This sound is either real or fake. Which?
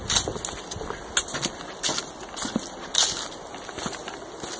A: real